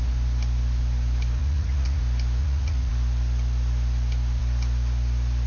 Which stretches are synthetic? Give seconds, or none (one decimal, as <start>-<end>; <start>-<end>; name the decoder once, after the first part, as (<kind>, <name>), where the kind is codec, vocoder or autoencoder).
1.4-2.0 (vocoder, Vocos); 2.4-2.9